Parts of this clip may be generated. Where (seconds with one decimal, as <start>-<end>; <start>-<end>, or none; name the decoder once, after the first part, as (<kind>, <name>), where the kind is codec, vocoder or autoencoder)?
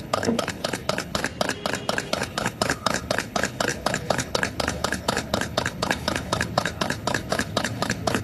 0.0-1.2 (codec, HILCodec); 2.1-8.2